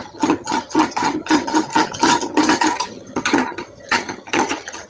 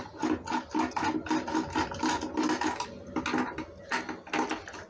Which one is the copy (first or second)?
first